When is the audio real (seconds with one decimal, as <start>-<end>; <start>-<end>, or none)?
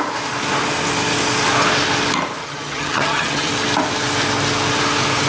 0.0-2.4; 3.5-5.3